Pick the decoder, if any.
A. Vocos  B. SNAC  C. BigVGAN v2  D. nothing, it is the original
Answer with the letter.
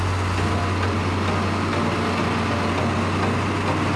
D